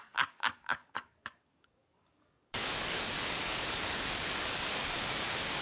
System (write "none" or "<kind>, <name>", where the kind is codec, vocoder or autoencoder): codec, DAC